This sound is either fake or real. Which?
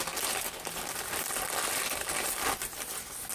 real